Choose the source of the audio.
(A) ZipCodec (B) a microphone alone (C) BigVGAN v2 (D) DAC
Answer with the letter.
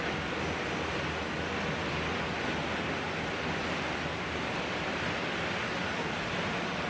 B